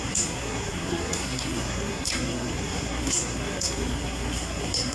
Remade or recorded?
remade